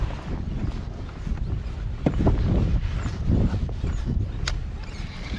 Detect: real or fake real